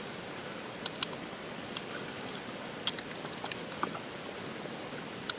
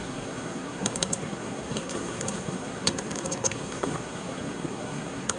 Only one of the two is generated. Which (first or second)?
second